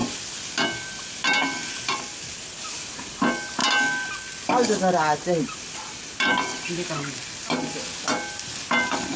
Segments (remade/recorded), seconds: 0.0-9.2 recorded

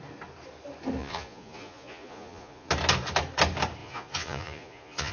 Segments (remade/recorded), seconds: 0.0-1.0 recorded; 1.0-2.7 remade; 2.7-3.8 recorded; 3.8-5.1 remade

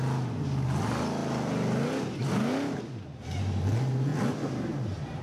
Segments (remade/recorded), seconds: 0.0-5.2 recorded

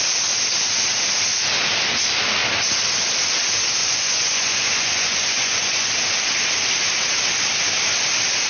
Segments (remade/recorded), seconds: 0.0-3.8 recorded; 3.8-5.9 remade; 5.9-8.5 recorded

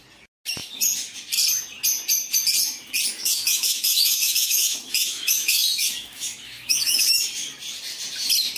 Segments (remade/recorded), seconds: 0.0-3.1 recorded; 3.1-7.2 remade; 7.2-8.6 recorded

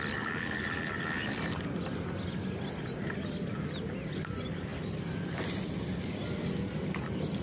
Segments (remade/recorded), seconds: 0.0-7.4 recorded